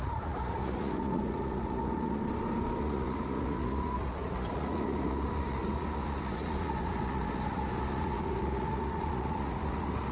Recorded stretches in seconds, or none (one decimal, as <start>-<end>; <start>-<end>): 2.2-2.8